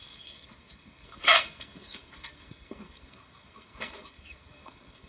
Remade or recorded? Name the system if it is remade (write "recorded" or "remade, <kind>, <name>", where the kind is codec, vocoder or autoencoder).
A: remade, codec, SNAC